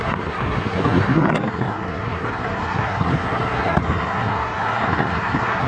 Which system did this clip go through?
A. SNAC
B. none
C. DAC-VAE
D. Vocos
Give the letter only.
A